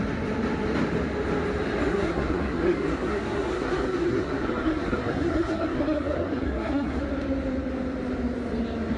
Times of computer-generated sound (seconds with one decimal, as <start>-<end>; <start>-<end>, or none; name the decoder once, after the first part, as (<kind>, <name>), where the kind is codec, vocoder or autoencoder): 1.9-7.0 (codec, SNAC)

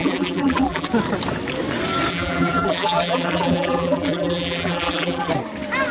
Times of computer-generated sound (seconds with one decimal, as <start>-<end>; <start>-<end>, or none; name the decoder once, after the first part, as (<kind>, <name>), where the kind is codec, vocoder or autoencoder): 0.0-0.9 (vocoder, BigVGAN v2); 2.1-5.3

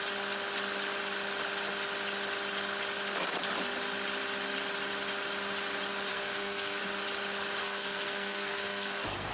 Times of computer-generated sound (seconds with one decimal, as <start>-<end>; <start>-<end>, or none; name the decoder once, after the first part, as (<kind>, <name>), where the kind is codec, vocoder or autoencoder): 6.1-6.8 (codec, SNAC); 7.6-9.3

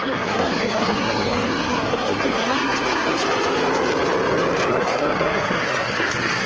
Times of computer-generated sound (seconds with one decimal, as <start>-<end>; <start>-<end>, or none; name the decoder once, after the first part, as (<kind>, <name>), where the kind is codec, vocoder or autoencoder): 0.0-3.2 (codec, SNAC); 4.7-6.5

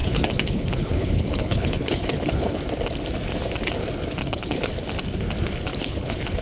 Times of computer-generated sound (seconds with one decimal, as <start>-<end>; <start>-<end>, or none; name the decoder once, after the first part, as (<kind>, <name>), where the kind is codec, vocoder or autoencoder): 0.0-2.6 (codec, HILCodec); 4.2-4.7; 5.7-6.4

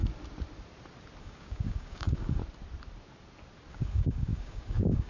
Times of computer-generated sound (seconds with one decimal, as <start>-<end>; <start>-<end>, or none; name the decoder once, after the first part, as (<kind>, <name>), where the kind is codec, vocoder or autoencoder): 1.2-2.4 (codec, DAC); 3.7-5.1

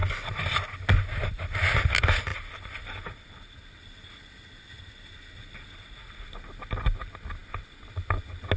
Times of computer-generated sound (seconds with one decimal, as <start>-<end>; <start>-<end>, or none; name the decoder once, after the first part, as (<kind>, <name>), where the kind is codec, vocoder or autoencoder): 2.3-3.6 (vocoder, BigVGAN v2); 7.4-8.2

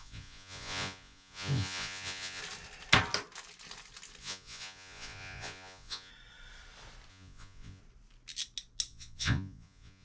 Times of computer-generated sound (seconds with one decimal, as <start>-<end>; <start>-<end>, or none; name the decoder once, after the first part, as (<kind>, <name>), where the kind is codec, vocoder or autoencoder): 0.0-2.4 (vocoder, Vocos); 4.2-6.1; 7.1-7.8; 8.9-10.0